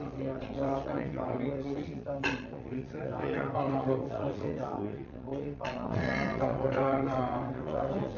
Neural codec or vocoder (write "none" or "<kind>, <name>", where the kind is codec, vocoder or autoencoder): vocoder, WaveNeXt